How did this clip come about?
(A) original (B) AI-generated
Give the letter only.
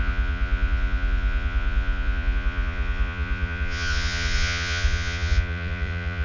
B